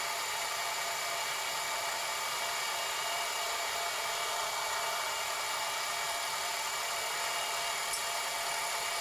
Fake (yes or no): yes